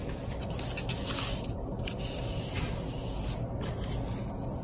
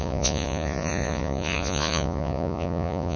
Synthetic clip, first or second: second